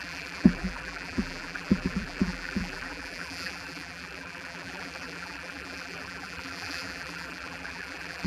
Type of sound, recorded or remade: remade